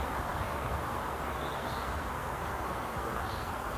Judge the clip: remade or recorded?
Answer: remade